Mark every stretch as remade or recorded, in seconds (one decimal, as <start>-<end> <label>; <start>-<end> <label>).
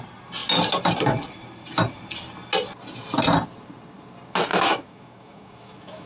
0.0-4.5 recorded; 4.5-6.1 remade